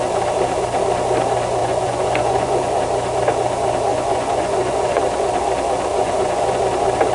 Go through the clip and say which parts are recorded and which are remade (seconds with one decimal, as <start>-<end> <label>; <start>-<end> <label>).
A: 0.0-1.6 recorded; 1.6-2.8 remade; 2.8-3.9 recorded; 3.9-5.0 remade; 5.0-5.9 recorded; 5.9-6.6 remade; 6.6-7.1 recorded